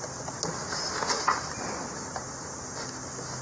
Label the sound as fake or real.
real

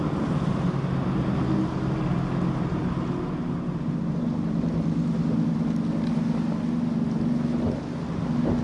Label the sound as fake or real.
real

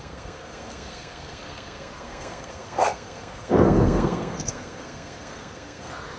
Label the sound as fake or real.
fake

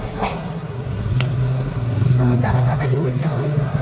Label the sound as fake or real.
fake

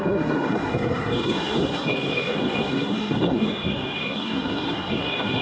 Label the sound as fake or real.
fake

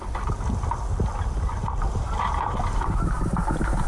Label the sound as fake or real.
real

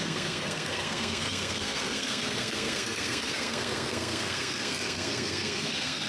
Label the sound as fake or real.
fake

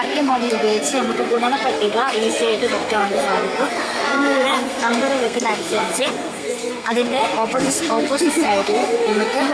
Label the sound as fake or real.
fake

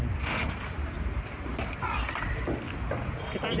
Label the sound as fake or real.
real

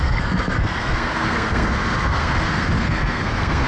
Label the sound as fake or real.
fake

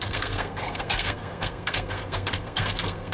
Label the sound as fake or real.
fake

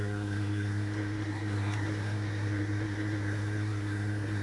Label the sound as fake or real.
fake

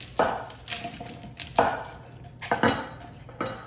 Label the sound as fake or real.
real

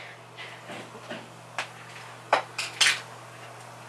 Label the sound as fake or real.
real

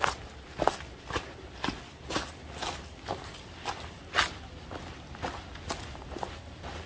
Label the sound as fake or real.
real